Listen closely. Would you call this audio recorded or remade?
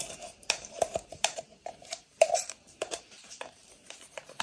remade